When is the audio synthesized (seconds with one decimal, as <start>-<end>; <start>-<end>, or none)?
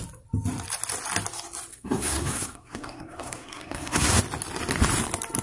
1.7-4.2